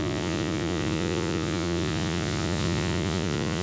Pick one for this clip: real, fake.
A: fake